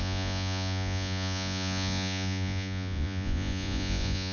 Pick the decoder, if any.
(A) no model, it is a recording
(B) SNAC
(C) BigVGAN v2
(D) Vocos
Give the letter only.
D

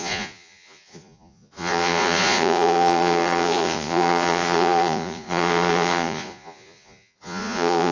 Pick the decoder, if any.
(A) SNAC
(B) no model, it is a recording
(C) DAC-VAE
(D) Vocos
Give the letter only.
D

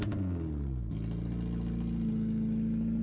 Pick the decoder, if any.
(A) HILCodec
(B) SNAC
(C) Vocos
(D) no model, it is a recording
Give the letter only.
D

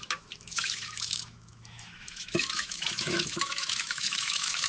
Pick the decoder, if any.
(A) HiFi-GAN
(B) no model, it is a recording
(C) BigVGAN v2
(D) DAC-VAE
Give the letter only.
D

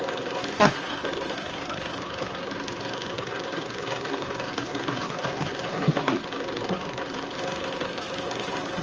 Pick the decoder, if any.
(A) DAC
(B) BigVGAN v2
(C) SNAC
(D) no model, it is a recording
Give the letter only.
C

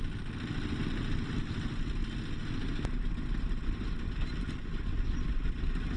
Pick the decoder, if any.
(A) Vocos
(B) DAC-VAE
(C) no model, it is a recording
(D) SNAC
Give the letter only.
C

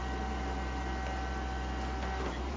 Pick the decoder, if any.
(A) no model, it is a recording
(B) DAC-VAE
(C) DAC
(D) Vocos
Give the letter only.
A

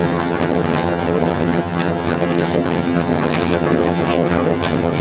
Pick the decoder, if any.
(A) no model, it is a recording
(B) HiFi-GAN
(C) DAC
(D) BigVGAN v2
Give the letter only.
B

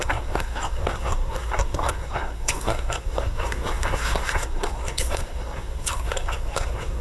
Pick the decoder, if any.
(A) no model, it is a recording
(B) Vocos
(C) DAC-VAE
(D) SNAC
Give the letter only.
D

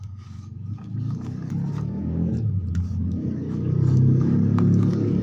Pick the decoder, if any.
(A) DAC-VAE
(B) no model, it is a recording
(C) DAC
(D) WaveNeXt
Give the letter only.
C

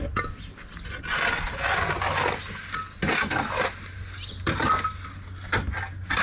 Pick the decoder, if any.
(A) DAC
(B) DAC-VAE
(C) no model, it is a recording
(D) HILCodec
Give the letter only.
C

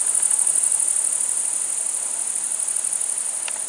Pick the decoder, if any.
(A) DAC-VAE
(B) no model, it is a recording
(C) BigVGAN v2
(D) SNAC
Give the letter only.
B